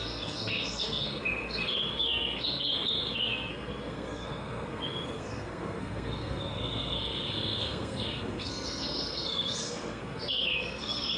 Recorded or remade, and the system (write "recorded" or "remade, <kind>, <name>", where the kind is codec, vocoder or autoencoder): remade, codec, SNAC